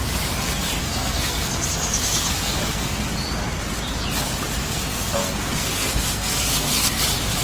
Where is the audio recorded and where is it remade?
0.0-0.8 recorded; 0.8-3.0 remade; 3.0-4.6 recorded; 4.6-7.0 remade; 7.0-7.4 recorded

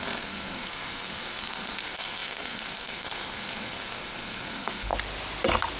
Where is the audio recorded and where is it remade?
0.0-4.9 remade; 4.9-5.8 recorded